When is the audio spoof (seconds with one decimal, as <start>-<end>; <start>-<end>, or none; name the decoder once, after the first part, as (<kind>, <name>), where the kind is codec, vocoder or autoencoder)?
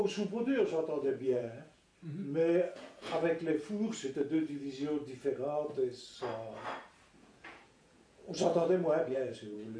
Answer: 0.0-1.9 (vocoder, Vocos); 2.7-3.2; 7.2-9.8